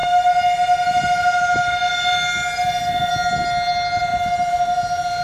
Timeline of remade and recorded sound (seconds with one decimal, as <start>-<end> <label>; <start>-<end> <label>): 0.0-4.1 recorded; 4.1-4.7 remade; 4.7-5.2 recorded